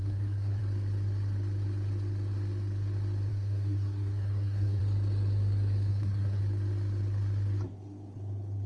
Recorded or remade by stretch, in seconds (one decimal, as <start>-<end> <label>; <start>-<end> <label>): 0.0-0.6 remade; 0.6-3.3 recorded; 3.3-4.8 remade; 4.8-5.9 recorded; 5.9-6.4 remade; 6.4-8.7 recorded